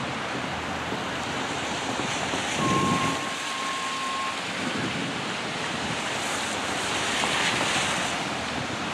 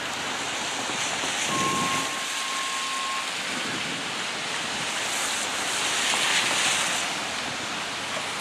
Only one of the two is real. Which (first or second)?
second